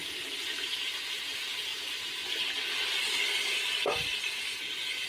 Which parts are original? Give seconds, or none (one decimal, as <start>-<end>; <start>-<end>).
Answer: 0.0-5.1